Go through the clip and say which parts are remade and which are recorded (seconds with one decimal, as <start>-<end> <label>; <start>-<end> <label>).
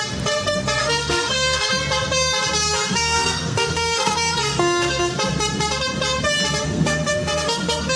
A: 0.0-0.8 recorded; 0.8-1.7 remade; 1.7-2.9 recorded; 2.9-5.1 remade; 5.1-6.6 recorded; 6.6-8.0 remade